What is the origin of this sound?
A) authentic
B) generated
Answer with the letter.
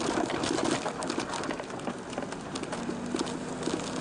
A